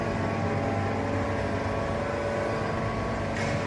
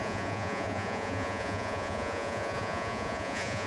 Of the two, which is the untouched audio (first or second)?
first